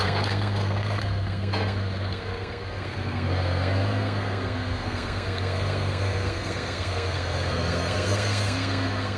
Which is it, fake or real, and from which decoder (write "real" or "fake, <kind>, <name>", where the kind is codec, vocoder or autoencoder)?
fake, codec, SNAC